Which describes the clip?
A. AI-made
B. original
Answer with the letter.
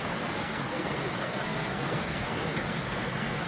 A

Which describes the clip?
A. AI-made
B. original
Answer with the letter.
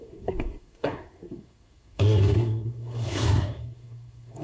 A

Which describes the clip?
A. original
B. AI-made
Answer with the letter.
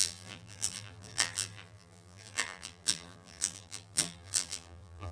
B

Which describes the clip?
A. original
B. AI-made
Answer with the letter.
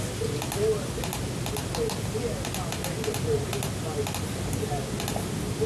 A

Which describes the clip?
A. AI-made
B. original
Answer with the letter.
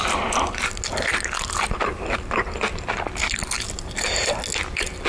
B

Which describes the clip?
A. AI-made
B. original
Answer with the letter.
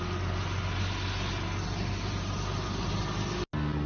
B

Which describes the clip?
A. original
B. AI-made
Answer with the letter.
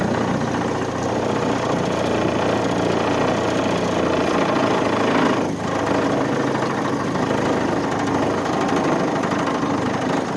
A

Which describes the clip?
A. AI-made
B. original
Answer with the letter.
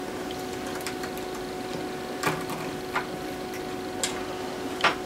B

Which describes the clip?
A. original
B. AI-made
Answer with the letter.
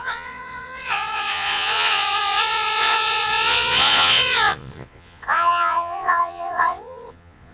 B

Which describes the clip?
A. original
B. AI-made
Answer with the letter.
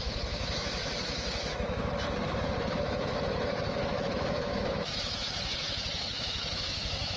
B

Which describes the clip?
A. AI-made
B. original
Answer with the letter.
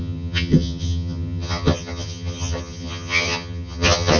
A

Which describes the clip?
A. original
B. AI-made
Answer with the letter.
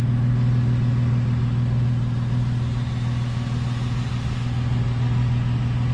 A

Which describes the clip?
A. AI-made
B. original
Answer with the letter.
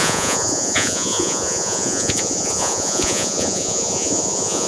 A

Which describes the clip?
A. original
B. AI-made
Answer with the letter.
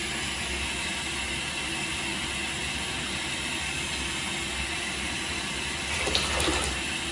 A